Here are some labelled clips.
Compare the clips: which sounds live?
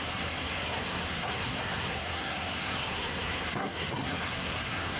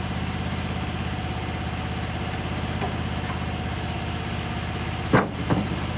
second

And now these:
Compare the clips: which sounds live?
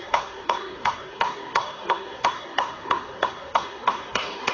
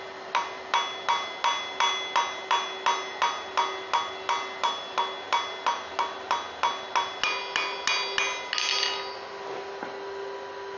second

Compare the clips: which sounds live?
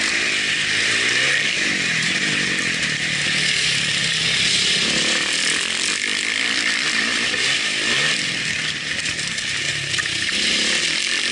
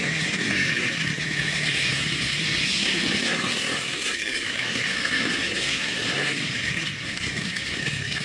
first